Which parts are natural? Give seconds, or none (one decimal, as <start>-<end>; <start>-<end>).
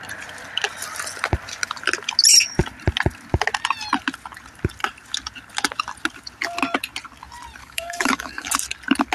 0.0-7.6; 8.5-9.1